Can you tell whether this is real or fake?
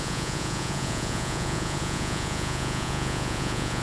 fake